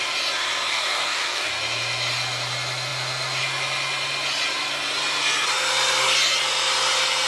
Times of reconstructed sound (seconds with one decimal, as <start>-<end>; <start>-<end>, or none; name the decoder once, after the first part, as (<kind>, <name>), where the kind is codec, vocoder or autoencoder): 0.7-1.5 (codec, DAC)